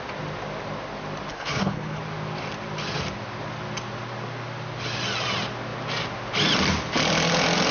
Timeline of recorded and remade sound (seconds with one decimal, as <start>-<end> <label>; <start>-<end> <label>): 0.0-1.3 recorded; 1.3-2.0 remade; 2.0-7.7 recorded